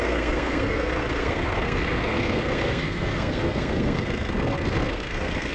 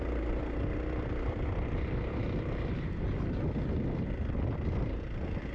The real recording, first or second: second